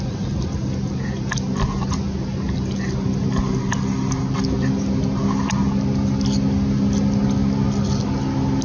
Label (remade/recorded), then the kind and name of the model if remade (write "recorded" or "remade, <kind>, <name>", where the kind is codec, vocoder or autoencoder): recorded